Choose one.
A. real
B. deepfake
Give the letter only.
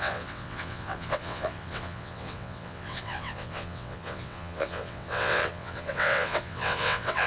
B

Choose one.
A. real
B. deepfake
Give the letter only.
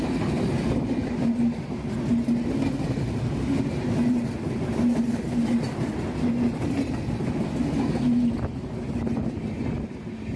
A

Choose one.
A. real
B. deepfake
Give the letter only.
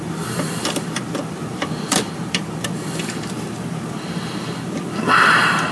B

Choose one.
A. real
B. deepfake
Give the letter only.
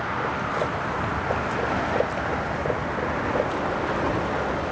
A